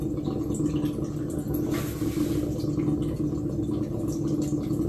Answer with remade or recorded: recorded